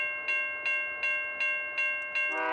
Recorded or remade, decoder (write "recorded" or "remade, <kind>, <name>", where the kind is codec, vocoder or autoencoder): recorded